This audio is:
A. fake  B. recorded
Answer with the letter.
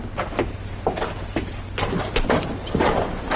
B